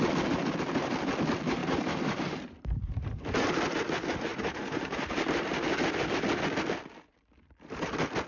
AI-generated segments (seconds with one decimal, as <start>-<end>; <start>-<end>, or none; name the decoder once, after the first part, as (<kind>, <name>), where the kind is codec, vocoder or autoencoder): 1.6-3.7 (vocoder, BigVGAN v2); 4.3-5.7